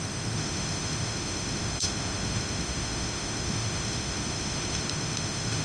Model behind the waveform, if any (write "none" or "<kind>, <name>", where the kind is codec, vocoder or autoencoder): autoencoder, DAC-VAE